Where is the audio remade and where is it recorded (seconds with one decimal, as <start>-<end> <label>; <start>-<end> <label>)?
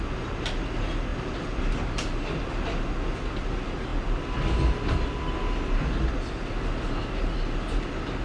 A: 0.0-8.2 recorded